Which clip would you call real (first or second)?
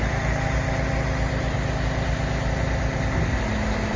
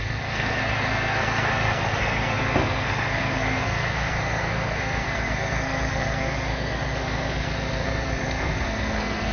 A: first